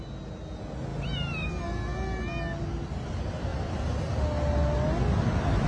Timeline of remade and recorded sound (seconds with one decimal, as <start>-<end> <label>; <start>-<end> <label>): 0.0-5.7 recorded